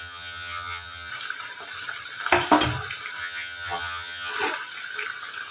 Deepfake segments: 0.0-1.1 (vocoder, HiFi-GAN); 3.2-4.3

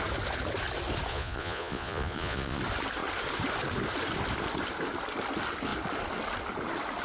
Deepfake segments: 1.1-2.6 (vocoder, Vocos)